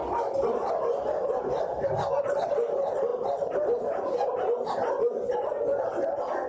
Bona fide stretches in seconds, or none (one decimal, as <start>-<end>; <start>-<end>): 0.0-6.5